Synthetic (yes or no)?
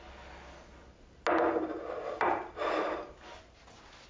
no